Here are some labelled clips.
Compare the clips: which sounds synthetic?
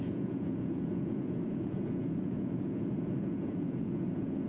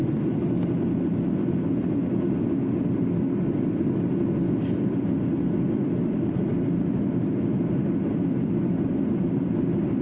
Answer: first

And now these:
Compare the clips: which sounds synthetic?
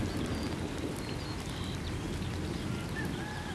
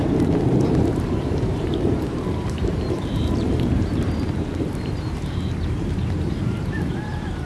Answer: second